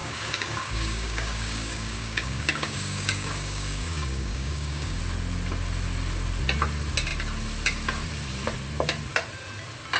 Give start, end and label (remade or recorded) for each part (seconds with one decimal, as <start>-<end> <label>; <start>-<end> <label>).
0.0-5.0 remade; 5.0-10.0 recorded